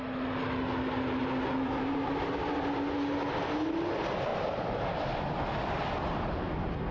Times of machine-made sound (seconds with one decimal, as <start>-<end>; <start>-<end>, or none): 1.2-2.3; 4.3-5.0